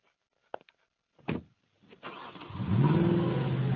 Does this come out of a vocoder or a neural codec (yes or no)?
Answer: no